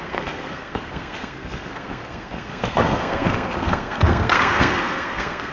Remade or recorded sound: remade